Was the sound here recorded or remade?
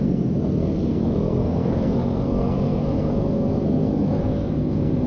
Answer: remade